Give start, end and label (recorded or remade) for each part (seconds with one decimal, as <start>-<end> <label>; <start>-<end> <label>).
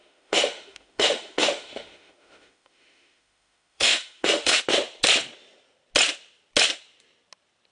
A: 0.0-4.6 remade; 4.6-7.7 recorded